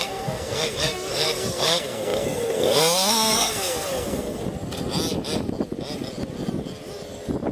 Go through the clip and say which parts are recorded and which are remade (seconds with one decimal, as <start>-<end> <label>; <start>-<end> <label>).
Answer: 0.0-4.4 remade; 4.4-7.5 recorded